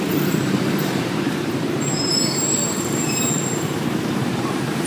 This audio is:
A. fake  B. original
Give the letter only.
A